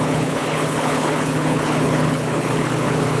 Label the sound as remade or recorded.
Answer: remade